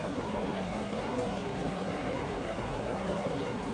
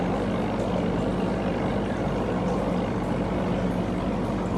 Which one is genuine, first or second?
second